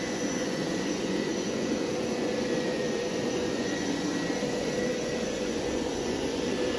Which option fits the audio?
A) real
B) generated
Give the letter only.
B